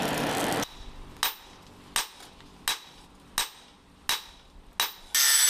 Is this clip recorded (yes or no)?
yes